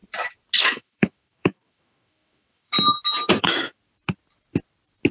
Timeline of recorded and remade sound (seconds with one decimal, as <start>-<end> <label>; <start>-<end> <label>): 0.0-0.6 recorded; 0.6-2.7 remade; 2.7-3.4 recorded; 3.4-3.8 remade; 3.8-5.1 recorded